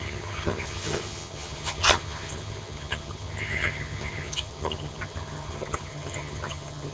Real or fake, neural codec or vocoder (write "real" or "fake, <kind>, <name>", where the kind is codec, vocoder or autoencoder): fake, vocoder, HiFi-GAN